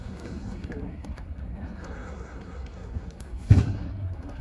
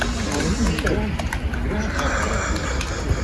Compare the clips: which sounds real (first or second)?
second